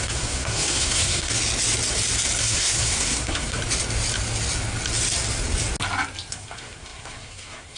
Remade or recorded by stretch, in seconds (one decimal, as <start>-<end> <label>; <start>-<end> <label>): 0.0-1.4 remade; 1.4-2.4 recorded; 2.4-3.6 remade; 3.6-6.3 recorded; 6.3-7.8 remade